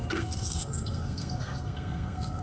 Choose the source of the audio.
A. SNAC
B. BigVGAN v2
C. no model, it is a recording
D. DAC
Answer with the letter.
A